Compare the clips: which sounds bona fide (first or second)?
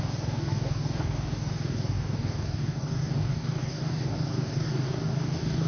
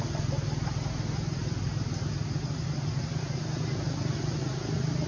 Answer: second